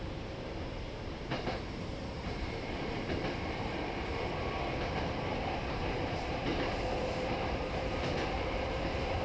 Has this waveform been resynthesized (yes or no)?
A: yes